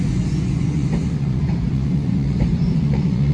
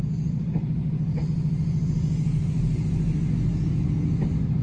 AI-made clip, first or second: first